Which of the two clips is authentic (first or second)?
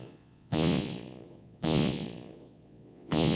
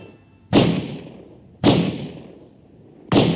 second